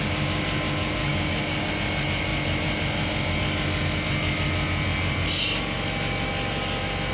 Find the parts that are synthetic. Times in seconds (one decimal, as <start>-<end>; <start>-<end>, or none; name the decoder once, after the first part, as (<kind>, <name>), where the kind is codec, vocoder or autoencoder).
1.0-1.7 (codec, DAC)